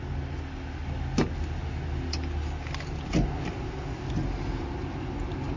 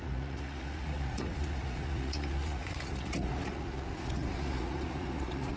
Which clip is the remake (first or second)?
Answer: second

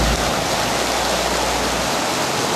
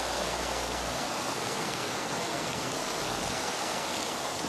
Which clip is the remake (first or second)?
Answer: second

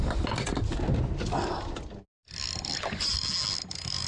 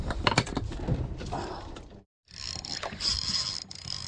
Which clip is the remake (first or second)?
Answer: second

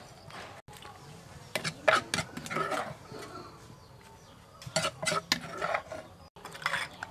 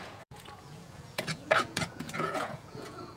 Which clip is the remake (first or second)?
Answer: second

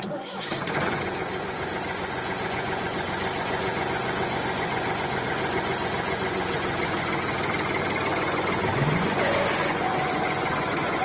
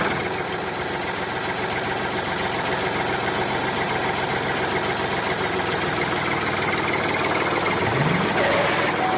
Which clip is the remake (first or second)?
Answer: first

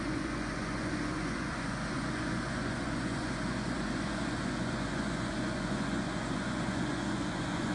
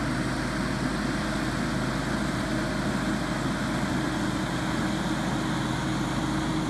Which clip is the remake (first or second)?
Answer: first